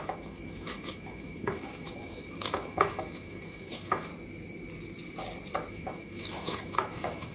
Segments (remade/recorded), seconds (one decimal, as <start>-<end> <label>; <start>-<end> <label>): 0.0-4.1 remade; 4.1-5.7 recorded; 5.7-7.3 remade

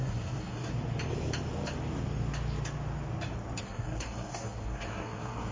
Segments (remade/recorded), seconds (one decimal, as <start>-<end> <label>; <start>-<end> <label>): 0.0-0.7 remade; 0.7-3.6 recorded; 3.6-5.5 remade